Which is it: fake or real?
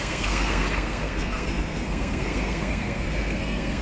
fake